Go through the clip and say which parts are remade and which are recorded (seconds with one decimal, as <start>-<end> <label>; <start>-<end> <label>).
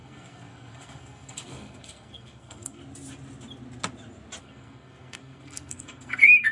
0.0-2.8 remade; 2.8-4.4 recorded; 4.4-6.5 remade